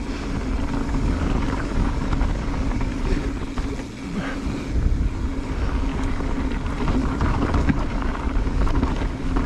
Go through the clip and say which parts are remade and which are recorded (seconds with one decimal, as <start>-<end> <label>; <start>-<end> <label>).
0.0-0.8 recorded; 0.8-3.0 remade; 3.0-5.9 recorded; 5.9-6.4 remade; 6.4-7.0 recorded; 7.0-9.5 remade